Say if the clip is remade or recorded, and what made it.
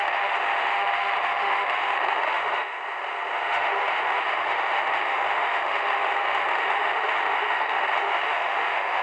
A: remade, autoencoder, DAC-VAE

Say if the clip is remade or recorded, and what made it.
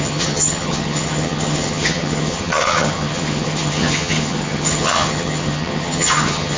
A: remade, vocoder, HiFi-GAN